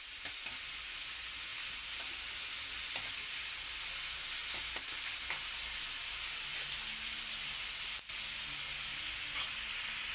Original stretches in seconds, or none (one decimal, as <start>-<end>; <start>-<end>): 0.0-10.1